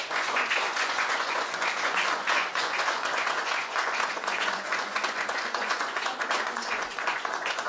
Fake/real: fake